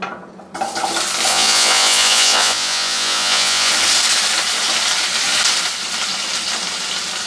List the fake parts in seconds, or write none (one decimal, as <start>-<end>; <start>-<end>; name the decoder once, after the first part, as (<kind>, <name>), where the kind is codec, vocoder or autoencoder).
1.3-3.7 (vocoder, Vocos)